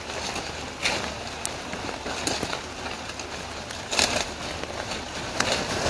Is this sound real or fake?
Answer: real